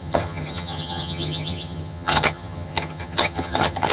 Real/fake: fake